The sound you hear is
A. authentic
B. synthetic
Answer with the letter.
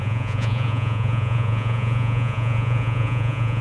B